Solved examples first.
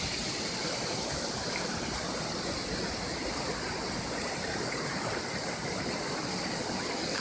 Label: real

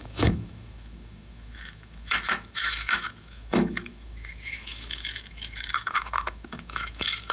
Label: fake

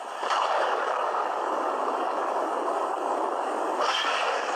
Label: fake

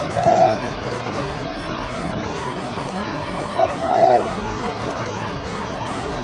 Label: fake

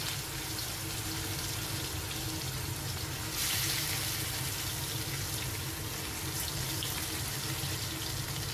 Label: real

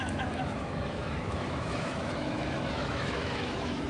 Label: fake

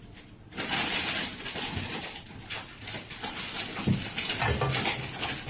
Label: real